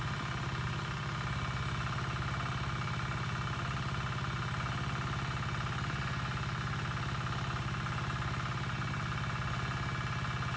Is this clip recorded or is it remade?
recorded